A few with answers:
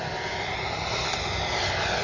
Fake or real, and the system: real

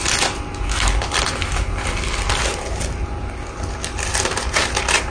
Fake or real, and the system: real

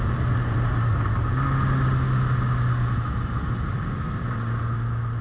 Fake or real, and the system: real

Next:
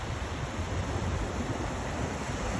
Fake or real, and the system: fake, vocoder, BigVGAN v2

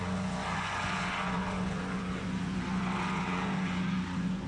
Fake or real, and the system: fake, vocoder, Vocos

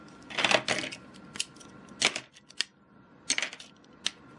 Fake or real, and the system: real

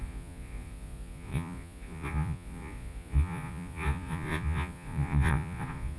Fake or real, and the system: fake, vocoder, Vocos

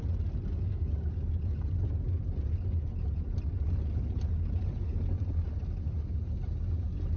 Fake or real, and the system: real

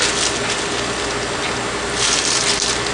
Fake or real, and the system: real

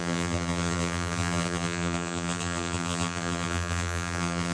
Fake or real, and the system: fake, vocoder, BigVGAN v2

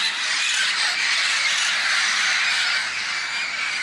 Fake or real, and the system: real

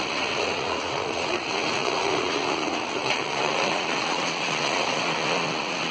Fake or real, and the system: fake, vocoder, Vocos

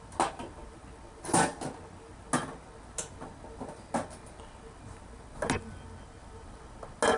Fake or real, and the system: real